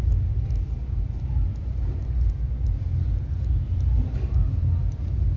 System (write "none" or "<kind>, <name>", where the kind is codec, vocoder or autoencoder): none